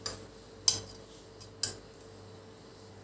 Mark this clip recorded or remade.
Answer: recorded